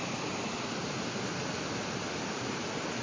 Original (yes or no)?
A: yes